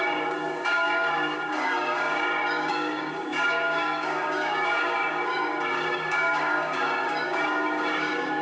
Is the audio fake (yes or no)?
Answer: yes